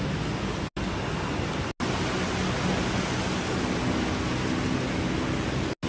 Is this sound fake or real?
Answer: real